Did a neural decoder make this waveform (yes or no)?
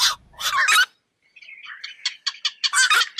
no